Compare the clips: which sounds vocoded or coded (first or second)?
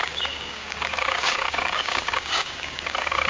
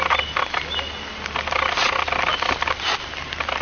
first